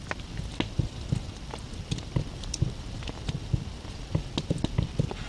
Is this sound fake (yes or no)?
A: no